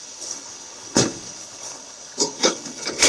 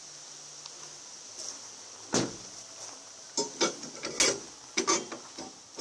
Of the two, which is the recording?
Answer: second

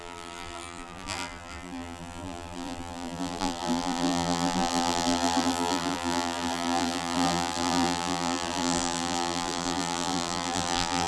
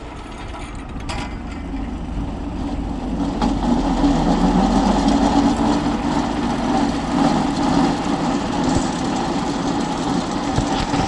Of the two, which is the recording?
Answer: second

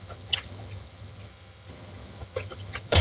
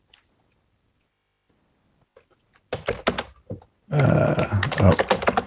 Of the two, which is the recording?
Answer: second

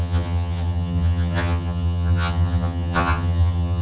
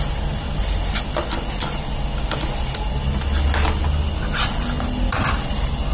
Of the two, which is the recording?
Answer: second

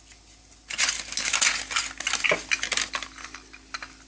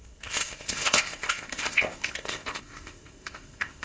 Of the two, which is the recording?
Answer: first